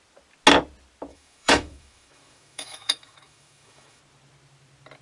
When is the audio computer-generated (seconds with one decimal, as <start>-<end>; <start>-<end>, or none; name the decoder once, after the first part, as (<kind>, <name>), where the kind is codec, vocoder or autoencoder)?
1.1-4.0 (autoencoder, DAC-VAE)